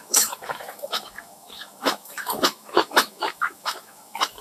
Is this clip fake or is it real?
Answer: fake